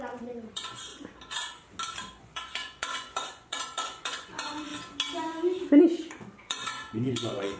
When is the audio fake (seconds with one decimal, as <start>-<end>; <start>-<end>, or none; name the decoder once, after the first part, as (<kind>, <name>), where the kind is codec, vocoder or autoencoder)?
0.0-0.9 (vocoder, Vocos); 2.2-4.7; 5.8-7.6